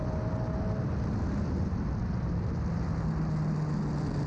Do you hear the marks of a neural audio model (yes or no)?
no